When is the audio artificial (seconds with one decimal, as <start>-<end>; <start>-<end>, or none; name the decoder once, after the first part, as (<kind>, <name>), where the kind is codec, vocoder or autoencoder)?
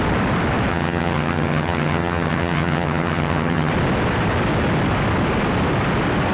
0.7-3.7 (vocoder, HiFi-GAN)